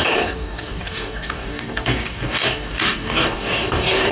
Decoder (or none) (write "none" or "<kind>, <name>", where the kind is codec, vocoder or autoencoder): codec, DAC